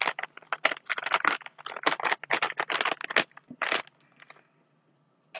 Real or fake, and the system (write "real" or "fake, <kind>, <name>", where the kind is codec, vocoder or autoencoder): real